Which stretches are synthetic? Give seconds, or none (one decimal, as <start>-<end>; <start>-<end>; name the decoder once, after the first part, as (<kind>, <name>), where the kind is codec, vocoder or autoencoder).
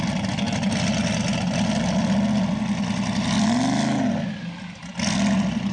none